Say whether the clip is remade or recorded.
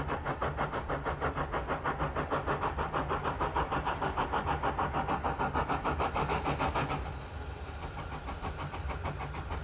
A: recorded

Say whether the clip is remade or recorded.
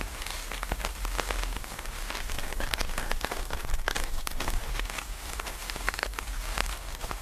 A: remade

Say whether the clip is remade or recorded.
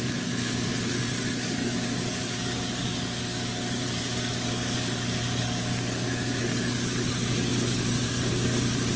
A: remade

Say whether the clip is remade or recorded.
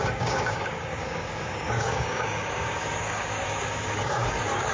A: remade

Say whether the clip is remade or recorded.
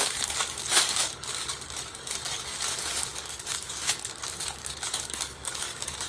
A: remade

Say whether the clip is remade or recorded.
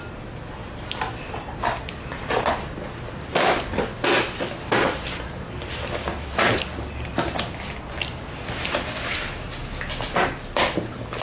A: recorded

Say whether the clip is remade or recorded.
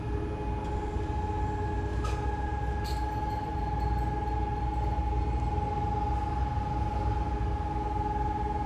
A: recorded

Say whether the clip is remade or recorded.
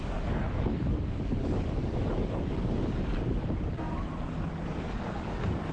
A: remade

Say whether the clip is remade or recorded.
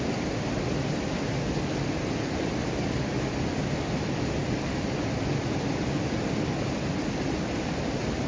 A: recorded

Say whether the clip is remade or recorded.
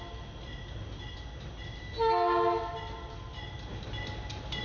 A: recorded